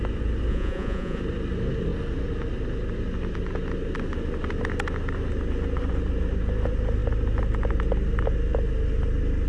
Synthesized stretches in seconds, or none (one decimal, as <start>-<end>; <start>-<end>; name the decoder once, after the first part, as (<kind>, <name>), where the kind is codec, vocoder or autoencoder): 0.5-1.2 (vocoder, Vocos)